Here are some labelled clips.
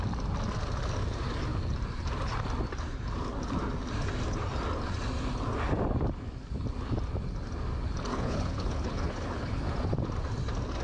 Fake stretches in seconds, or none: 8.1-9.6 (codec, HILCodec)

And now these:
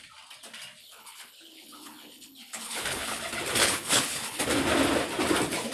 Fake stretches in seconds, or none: 0.8-3.2 (codec, HILCodec); 3.6-4.4

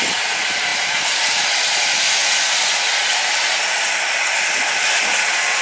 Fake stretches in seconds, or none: none

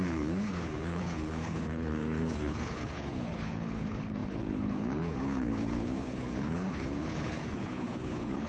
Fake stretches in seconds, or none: 0.0-8.5 (codec, HILCodec)

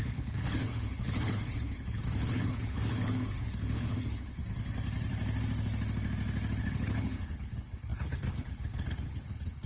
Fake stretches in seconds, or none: 0.0-4.4 (codec, HILCodec); 6.6-9.7

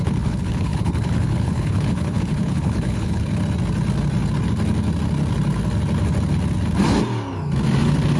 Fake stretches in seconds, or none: 0.0-3.3 (codec, HILCodec)

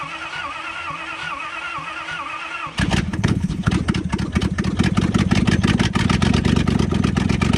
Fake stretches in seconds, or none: 3.1-3.7 (codec, HILCodec)